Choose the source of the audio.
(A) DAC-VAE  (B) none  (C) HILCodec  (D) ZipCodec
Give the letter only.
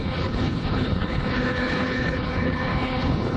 C